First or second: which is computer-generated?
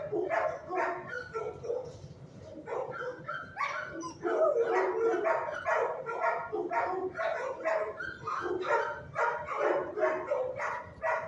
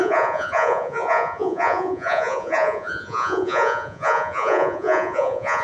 second